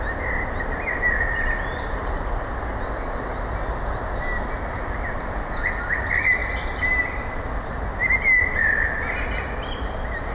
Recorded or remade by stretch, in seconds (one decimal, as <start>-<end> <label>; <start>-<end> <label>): 0.0-10.3 recorded